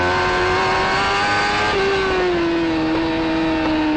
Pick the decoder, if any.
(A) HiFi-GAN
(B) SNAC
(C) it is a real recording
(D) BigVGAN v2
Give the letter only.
C